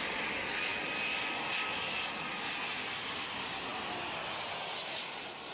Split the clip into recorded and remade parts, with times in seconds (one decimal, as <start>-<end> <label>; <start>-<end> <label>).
0.0-5.5 recorded